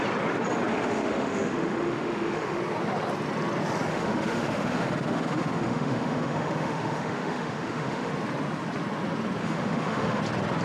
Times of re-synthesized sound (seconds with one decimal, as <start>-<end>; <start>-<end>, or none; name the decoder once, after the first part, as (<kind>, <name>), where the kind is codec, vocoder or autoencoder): 0.7-2.6 (autoencoder, DAC-VAE); 3.9-8.1; 9.4-10.2